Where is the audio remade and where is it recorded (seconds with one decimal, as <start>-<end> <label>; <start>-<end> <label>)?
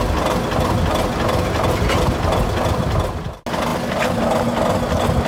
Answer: 0.0-5.3 recorded